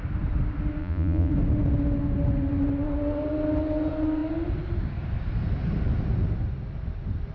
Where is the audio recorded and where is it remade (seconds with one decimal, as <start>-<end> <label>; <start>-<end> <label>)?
0.0-0.8 recorded; 0.8-1.3 remade; 1.3-7.3 recorded